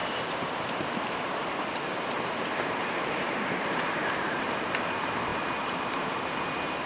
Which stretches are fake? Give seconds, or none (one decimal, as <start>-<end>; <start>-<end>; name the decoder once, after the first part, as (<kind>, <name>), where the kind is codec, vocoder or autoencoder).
0.0-6.9 (vocoder, BigVGAN v2)